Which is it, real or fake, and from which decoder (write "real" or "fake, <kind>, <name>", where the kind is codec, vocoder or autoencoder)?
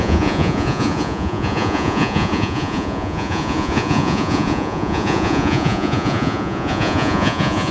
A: fake, vocoder, Vocos